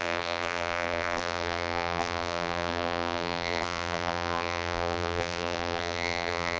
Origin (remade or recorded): remade